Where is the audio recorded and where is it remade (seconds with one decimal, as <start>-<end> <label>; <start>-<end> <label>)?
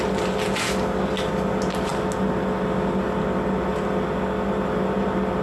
0.0-5.4 recorded